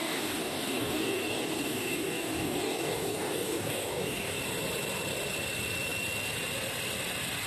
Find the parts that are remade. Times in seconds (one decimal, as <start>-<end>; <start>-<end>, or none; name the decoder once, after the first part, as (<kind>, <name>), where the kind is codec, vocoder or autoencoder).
0.0-4.4 (codec, DAC)